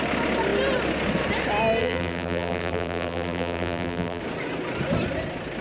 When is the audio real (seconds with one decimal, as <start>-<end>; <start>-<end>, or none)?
0.0-1.8; 4.2-5.6